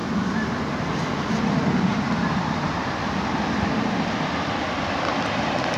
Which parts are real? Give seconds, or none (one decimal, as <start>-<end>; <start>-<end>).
0.0-1.9; 2.9-5.8